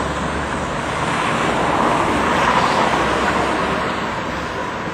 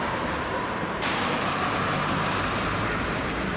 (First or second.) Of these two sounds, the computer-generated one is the second